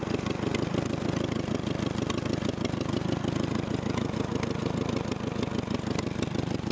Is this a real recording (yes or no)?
yes